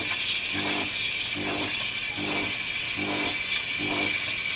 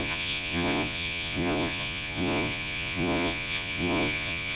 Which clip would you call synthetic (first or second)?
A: second